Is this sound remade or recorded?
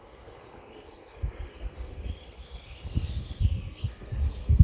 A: remade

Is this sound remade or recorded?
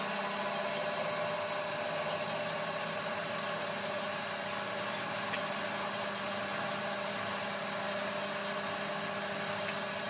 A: recorded